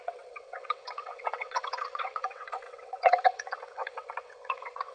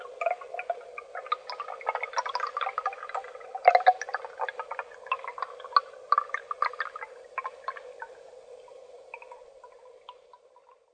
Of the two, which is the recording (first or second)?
second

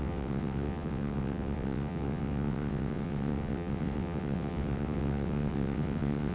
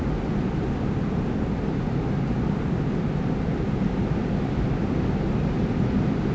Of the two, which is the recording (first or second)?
second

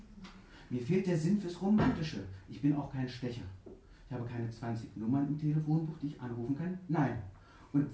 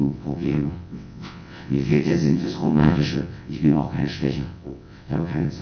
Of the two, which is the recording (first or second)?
first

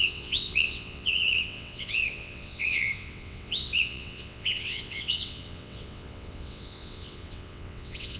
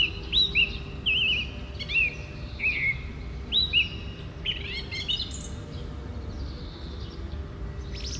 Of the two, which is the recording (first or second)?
second